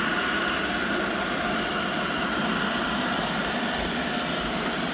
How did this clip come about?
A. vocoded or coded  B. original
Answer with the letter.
B